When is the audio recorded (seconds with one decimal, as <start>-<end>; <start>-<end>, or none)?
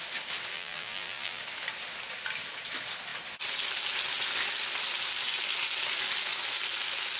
0.0-0.5; 1.4-7.2